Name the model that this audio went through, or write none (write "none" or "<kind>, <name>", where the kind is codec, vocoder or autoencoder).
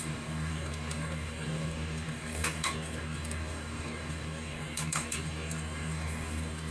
codec, DAC